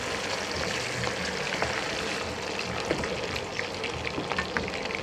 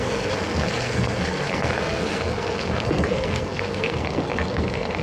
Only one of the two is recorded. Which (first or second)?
first